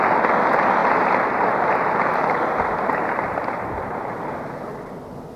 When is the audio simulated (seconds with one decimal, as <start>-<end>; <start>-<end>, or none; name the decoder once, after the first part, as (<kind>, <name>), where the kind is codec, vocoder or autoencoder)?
0.8-4.0 (vocoder, BigVGAN v2)